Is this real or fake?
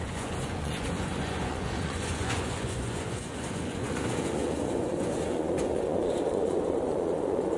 fake